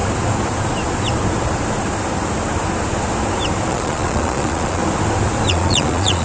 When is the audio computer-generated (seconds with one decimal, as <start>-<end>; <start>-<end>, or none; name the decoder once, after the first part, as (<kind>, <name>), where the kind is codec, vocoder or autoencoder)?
3.7-4.8 (vocoder, Vocos); 5.5-6.2